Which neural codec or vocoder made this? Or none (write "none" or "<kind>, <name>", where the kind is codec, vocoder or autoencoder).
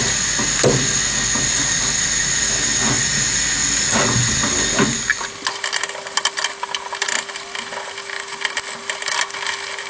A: none